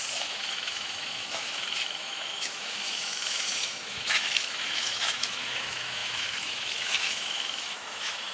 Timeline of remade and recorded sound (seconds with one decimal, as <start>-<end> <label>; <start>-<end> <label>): 0.0-8.3 remade